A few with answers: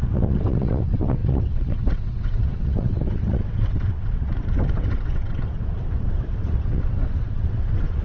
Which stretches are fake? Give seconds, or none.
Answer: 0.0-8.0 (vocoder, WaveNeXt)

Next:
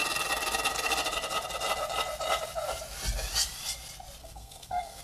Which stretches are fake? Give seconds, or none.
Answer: 4.2-5.0 (codec, SNAC)

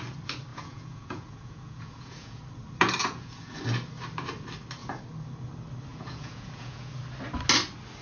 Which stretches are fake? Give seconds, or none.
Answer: 0.5-2.4 (vocoder, Vocos); 3.0-3.6; 5.9-6.9

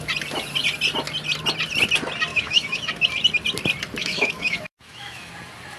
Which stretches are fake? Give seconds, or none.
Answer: 2.3-2.9 (autoencoder, DAC-VAE); 4.0-5.3

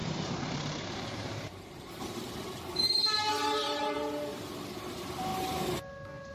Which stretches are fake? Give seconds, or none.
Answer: 0.0-5.3 (vocoder, BigVGAN v2)

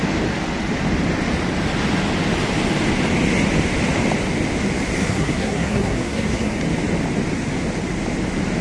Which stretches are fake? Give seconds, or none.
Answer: 5.0-6.6 (codec, SNAC)